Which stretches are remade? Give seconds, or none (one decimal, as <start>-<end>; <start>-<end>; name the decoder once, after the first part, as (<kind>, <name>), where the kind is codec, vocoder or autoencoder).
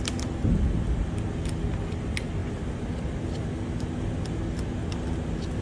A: none